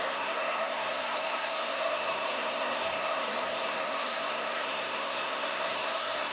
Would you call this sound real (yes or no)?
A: no